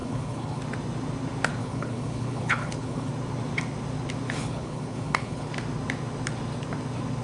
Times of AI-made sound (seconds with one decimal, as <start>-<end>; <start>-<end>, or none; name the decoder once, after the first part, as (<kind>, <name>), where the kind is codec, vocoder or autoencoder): 0.0-0.6 (codec, HILCodec); 1.6-3.1; 4.4-5.5